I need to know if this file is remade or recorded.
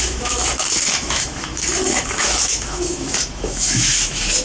remade